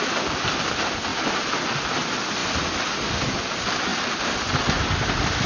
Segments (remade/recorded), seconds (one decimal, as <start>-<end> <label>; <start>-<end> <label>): 0.0-1.1 recorded; 1.1-1.6 remade; 1.6-3.9 recorded; 3.9-4.8 remade; 4.8-5.5 recorded